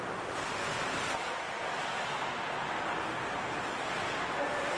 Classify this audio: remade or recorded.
recorded